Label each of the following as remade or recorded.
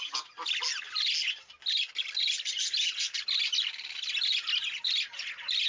recorded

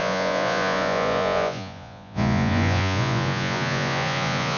remade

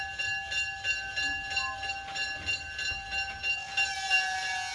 recorded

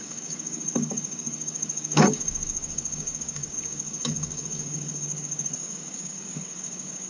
remade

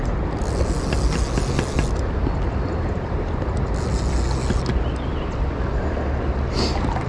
recorded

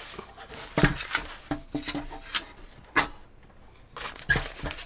recorded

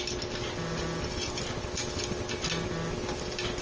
recorded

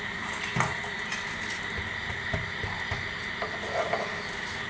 recorded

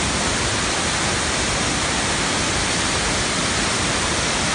recorded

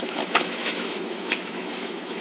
remade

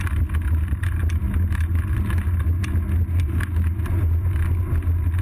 recorded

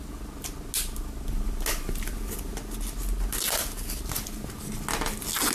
recorded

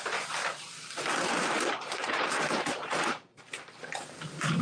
remade